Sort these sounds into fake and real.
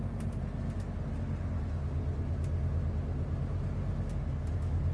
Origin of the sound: real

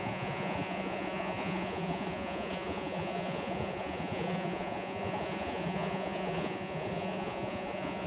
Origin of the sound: fake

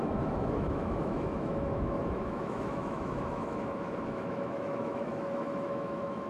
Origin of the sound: fake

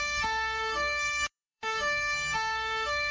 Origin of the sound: fake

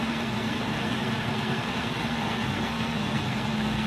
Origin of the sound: fake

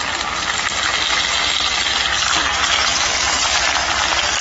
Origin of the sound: real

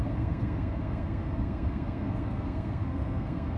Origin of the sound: fake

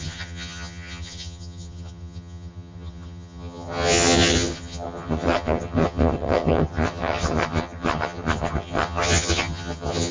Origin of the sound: fake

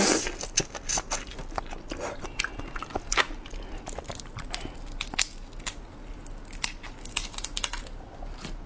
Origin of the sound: real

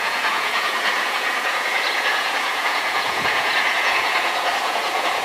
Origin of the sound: fake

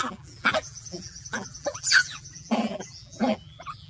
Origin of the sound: fake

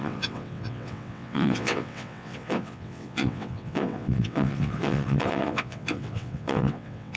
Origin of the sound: fake